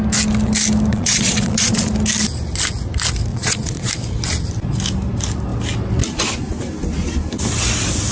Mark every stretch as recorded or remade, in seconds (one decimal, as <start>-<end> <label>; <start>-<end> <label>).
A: 0.0-0.9 recorded; 0.9-1.9 remade; 1.9-3.3 recorded; 3.3-3.9 remade; 3.9-8.1 recorded

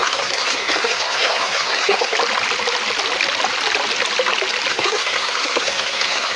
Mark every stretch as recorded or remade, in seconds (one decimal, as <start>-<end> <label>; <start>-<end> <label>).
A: 0.0-2.1 remade; 2.1-4.7 recorded; 4.7-6.4 remade

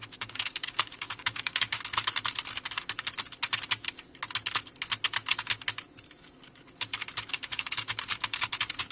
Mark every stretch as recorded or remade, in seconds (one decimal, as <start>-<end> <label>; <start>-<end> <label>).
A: 0.0-1.8 remade; 1.8-7.3 recorded; 7.3-8.5 remade; 8.5-8.9 recorded

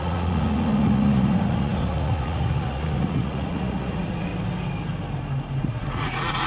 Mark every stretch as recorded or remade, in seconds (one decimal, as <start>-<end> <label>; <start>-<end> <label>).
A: 0.0-4.3 remade; 4.3-5.6 recorded; 5.6-6.5 remade